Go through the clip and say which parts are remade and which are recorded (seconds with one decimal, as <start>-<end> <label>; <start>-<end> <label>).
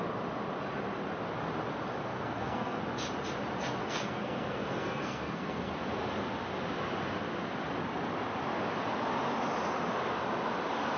0.0-2.0 recorded; 2.0-2.8 remade; 2.8-3.8 recorded; 3.8-5.7 remade; 5.7-11.0 recorded